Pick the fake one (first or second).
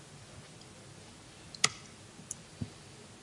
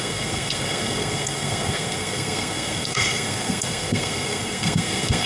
second